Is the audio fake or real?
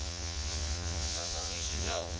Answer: fake